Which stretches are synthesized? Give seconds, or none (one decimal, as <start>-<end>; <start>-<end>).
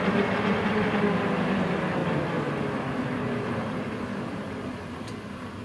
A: none